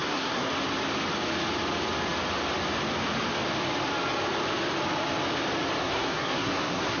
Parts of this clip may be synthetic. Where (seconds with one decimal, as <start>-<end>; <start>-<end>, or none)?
0.0-0.5; 5.8-7.0